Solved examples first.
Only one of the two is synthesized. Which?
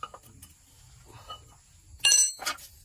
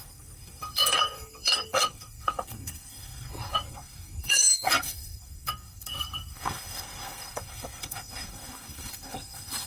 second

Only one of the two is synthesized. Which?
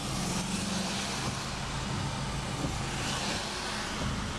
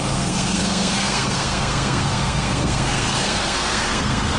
second